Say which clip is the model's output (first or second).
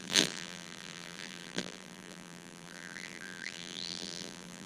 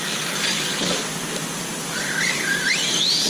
first